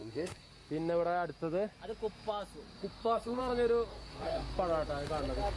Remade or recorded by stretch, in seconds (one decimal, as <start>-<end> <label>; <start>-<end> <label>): 0.0-0.5 remade; 0.5-2.9 recorded; 2.9-3.4 remade; 3.4-3.9 recorded; 3.9-4.5 remade; 4.5-5.6 recorded